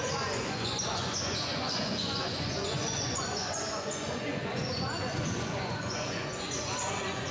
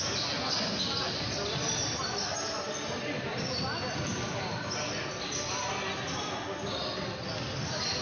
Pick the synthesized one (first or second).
first